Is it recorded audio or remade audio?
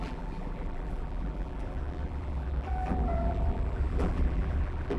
remade